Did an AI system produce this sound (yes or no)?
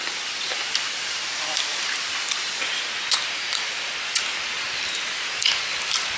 no